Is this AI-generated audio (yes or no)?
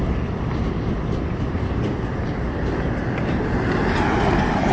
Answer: no